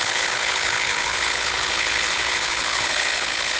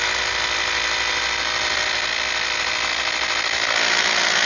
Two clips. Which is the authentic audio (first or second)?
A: second